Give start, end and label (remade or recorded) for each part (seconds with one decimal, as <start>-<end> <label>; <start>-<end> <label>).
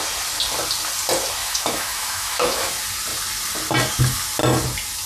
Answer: 0.0-1.4 recorded; 1.4-2.7 remade; 2.7-5.1 recorded